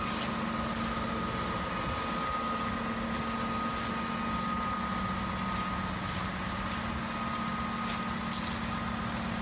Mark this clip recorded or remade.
recorded